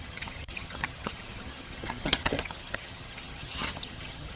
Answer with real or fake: fake